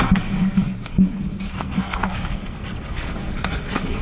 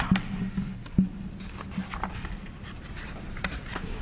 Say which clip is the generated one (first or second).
first